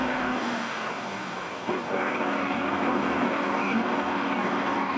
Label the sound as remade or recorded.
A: remade